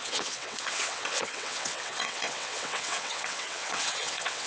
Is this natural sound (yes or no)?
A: no